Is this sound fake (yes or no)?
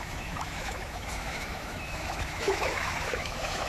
yes